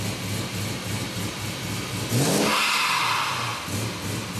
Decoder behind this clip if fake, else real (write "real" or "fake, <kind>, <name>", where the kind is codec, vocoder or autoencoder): real